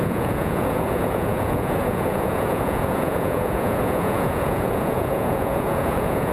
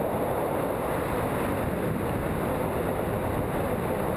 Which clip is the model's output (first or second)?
first